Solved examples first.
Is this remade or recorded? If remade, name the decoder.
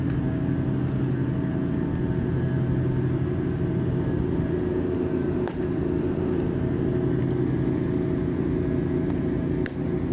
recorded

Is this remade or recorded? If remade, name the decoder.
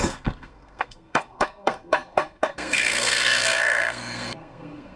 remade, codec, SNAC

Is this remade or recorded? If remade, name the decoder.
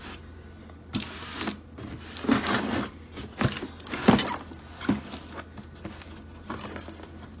recorded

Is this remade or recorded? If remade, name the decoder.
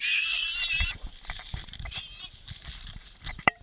remade, vocoder, BigVGAN v2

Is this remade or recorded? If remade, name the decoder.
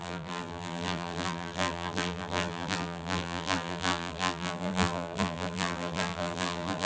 remade, vocoder, BigVGAN v2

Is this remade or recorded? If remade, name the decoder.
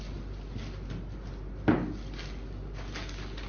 recorded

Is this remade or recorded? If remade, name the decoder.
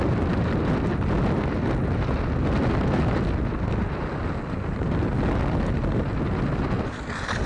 recorded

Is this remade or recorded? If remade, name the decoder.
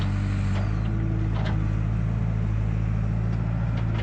recorded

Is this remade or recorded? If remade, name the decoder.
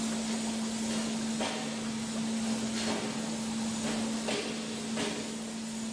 recorded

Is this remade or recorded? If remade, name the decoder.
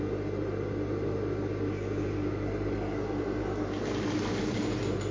recorded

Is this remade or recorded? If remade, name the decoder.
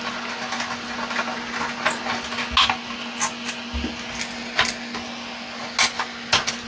recorded